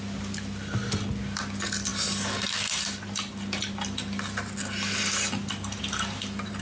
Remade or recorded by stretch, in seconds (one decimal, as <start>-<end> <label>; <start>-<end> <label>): 0.0-6.6 recorded